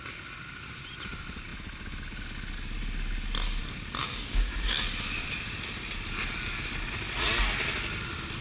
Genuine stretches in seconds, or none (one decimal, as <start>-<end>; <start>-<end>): 0.0-4.0; 4.8-8.4